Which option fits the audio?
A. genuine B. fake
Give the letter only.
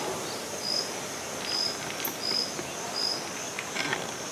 A